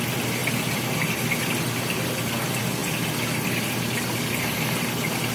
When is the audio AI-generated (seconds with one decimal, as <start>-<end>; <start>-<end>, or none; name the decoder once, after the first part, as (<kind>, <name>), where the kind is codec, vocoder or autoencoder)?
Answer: none